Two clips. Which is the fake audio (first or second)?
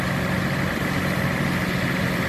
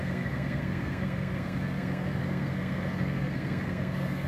second